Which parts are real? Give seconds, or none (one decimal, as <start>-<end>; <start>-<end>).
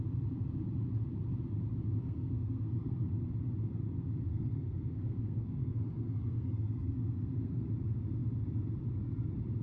0.0-2.0; 3.1-4.3; 7.7-9.6